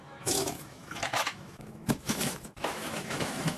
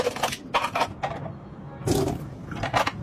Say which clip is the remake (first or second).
first